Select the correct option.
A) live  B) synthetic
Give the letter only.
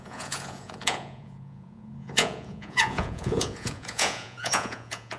B